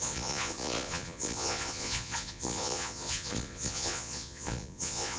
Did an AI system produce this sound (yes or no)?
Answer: yes